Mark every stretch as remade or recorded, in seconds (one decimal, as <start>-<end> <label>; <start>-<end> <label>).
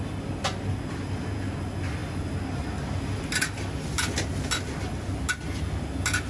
0.0-6.3 recorded